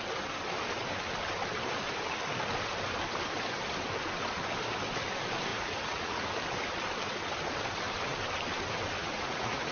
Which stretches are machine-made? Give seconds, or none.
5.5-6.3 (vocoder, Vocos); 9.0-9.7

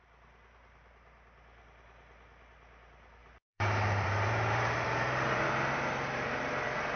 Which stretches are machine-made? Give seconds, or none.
3.2-7.0 (vocoder, BigVGAN v2)

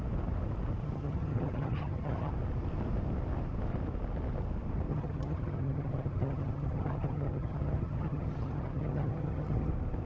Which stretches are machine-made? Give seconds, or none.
0.8-2.3 (vocoder, HiFi-GAN); 4.9-9.7

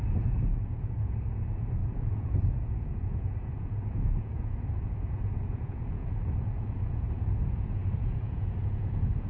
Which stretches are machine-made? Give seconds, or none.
0.0-9.3 (vocoder, Vocos)

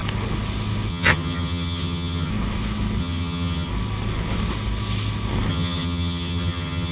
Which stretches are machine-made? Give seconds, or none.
0.9-2.3 (vocoder, HiFi-GAN); 3.0-3.7; 5.5-6.9